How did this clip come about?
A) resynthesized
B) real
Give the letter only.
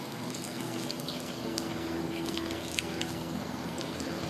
A